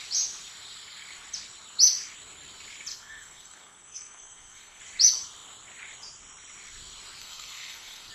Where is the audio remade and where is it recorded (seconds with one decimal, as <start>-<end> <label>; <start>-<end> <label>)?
0.0-2.9 recorded; 2.9-4.8 remade; 4.8-7.2 recorded; 7.2-8.1 remade